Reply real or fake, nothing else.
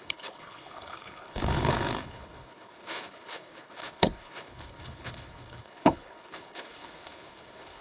fake